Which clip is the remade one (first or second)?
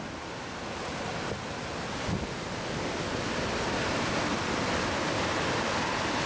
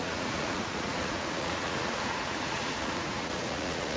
second